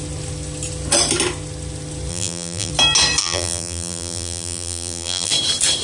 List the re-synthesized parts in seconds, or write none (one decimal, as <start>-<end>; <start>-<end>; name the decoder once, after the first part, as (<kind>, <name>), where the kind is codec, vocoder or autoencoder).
2.1-2.7 (vocoder, BigVGAN v2); 3.2-5.3